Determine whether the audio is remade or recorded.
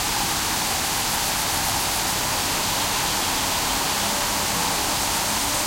recorded